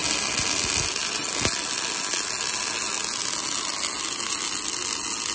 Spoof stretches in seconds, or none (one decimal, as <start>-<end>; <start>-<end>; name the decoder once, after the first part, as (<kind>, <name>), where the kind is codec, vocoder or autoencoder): none